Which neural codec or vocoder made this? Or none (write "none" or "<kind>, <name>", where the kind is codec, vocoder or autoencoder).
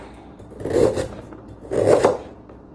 vocoder, BigVGAN v2